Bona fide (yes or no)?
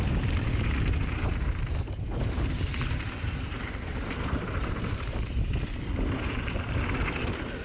yes